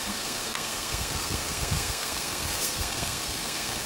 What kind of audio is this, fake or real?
fake